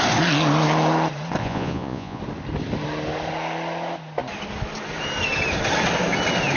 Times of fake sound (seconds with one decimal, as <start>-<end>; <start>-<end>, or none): 1.4-2.2